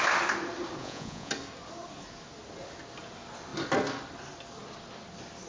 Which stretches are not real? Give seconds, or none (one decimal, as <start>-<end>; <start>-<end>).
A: 0.8-1.3